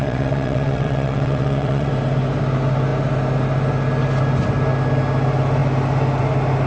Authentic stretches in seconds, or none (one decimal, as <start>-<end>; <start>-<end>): 1.9-6.7